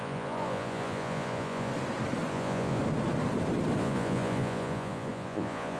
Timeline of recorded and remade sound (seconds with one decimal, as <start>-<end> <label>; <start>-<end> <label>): 0.0-1.7 remade; 1.7-2.3 recorded; 2.3-2.8 remade; 2.8-3.8 recorded; 3.8-5.8 remade